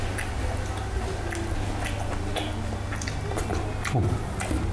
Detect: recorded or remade recorded